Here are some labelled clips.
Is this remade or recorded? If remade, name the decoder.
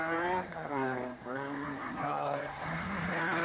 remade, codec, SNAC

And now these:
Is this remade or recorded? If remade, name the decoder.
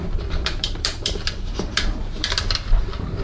remade, vocoder, BigVGAN v2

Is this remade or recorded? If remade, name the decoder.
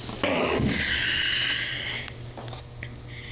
recorded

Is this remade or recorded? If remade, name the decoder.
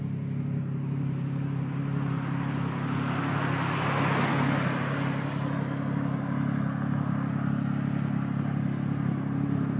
recorded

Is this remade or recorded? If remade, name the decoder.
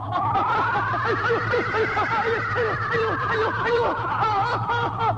remade, vocoder, BigVGAN v2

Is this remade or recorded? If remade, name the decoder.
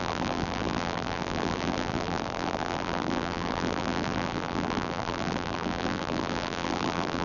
remade, vocoder, BigVGAN v2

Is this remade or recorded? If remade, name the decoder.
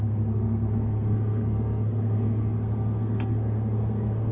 remade, codec, SNAC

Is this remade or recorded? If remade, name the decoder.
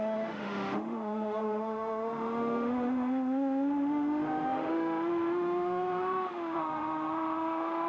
remade, autoencoder, DAC-VAE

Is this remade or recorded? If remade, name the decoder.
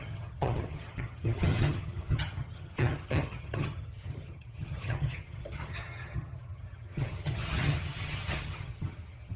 remade, vocoder, HiFi-GAN